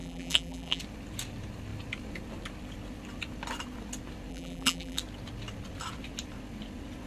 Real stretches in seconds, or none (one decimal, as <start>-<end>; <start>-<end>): 0.8-4.3; 5.0-7.1